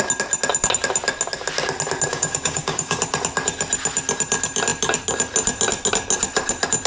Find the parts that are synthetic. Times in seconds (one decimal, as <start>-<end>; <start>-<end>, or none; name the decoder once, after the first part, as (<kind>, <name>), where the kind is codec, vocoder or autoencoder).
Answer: 2.1-3.0 (codec, DAC)